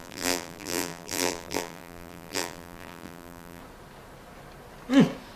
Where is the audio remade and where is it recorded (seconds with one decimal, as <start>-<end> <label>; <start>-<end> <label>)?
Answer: 0.0-3.6 remade; 3.6-5.4 recorded